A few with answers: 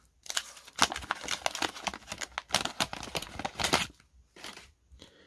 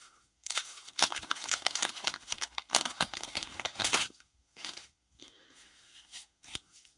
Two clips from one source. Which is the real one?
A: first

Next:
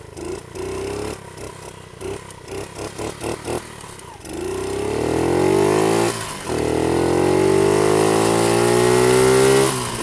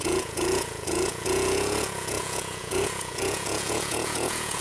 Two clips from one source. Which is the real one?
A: first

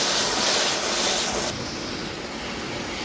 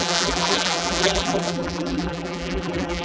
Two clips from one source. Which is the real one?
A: first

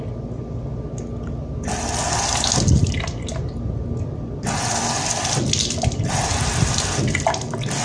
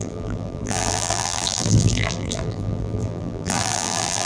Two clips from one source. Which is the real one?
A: first